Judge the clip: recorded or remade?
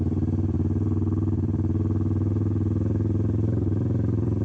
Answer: remade